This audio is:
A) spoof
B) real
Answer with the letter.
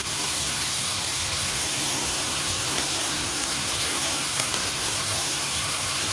A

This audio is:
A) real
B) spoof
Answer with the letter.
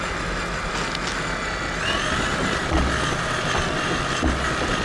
A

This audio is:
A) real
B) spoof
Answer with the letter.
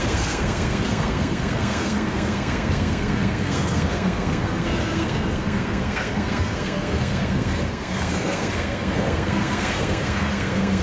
B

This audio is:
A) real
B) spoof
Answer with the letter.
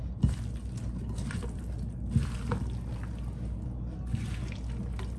A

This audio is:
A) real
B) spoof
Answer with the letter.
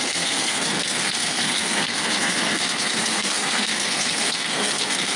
B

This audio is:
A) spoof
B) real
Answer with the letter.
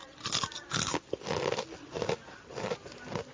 B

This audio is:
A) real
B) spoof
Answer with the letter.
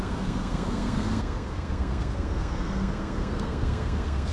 B